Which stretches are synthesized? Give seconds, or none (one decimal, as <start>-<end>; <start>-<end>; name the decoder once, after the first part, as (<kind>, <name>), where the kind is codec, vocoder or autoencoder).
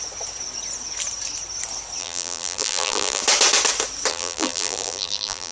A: 2.0-3.2 (vocoder, BigVGAN v2); 4.1-5.5